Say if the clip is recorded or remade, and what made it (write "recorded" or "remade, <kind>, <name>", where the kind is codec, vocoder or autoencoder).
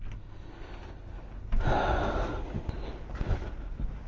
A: recorded